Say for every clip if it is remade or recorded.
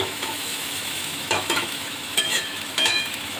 remade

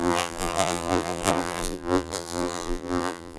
remade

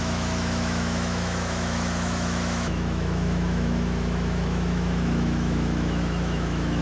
remade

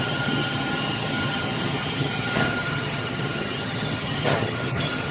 remade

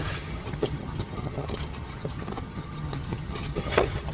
remade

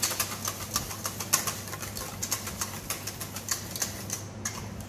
recorded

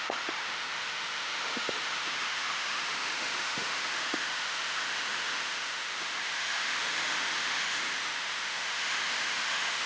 remade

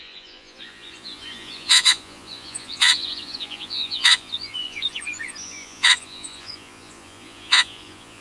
remade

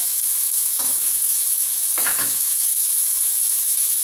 remade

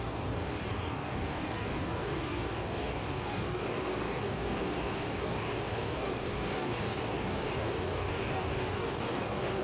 remade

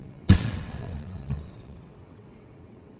remade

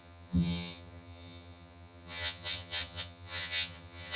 remade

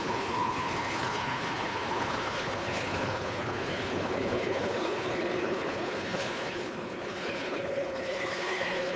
remade